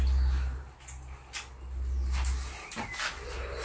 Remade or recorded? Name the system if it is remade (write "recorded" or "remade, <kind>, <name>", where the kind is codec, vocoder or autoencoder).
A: recorded